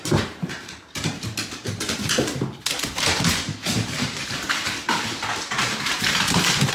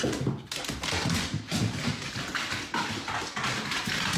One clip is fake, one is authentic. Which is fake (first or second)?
first